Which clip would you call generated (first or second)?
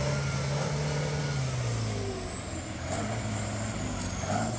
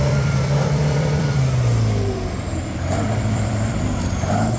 second